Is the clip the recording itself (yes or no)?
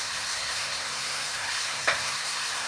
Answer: no